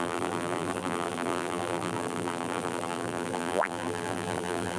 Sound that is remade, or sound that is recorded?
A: remade